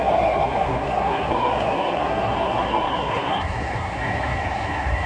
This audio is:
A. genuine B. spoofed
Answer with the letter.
B